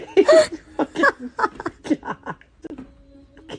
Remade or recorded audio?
recorded